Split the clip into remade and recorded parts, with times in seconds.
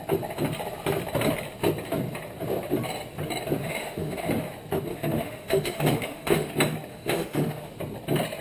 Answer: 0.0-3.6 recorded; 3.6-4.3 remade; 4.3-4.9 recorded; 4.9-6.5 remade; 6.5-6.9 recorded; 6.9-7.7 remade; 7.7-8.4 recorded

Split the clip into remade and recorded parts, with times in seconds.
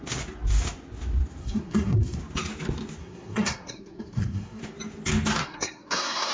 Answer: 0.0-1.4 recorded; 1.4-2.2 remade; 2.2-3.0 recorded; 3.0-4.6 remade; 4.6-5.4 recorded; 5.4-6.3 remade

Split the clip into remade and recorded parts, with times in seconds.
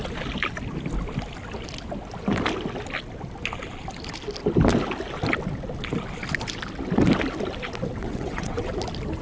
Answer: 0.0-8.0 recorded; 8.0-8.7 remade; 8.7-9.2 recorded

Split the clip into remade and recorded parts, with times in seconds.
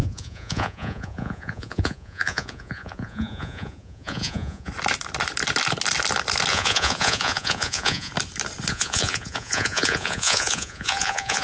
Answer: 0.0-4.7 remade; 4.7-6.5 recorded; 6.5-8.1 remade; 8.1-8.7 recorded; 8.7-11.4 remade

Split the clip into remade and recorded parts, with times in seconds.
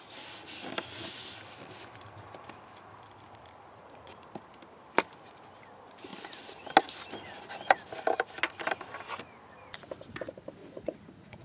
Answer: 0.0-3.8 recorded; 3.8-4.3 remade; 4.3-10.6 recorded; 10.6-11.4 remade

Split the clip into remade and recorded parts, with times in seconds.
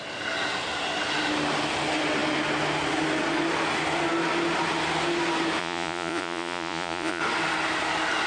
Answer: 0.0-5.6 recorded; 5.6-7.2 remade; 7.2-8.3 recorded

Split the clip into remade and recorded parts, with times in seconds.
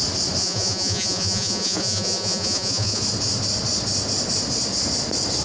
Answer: 0.0-0.4 recorded; 0.4-3.0 remade; 3.0-5.4 recorded